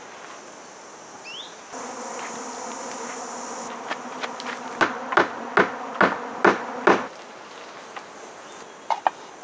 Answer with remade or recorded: recorded